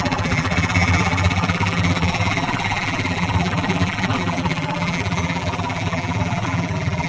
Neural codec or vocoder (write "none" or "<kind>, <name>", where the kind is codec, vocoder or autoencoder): vocoder, BigVGAN v2